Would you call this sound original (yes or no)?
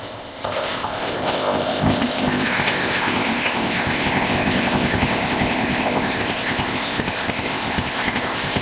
no